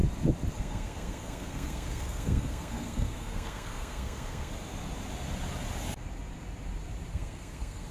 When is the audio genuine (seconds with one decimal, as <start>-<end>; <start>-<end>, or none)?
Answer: 0.0-0.5; 4.5-7.1